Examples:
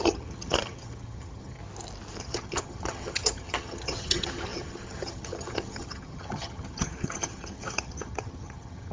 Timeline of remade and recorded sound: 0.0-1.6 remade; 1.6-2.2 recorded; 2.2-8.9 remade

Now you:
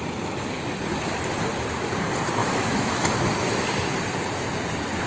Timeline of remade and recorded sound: 0.0-2.4 recorded; 2.4-3.3 remade; 3.3-5.1 recorded

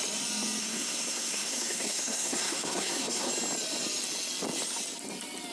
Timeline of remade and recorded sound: 0.0-0.6 recorded; 0.6-3.3 remade; 3.3-5.5 recorded

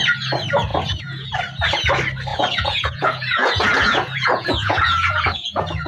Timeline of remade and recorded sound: 0.0-0.7 recorded; 0.7-1.4 remade; 1.4-2.3 recorded; 2.3-5.9 remade